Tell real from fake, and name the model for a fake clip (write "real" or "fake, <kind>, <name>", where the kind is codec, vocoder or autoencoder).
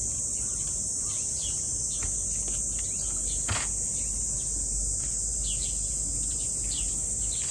real